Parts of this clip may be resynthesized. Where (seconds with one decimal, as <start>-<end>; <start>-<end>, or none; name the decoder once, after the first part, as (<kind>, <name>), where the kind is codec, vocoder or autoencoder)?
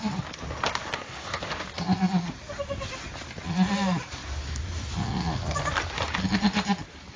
0.9-1.4 (codec, SNAC)